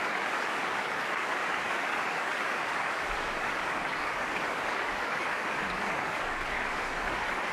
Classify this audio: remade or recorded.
remade